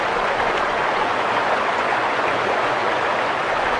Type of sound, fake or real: fake